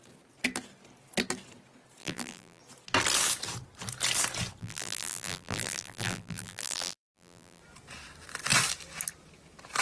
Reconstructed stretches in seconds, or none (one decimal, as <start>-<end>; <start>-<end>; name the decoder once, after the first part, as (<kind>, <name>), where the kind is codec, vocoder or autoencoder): 2.0-2.6 (vocoder, BigVGAN v2); 4.6-7.6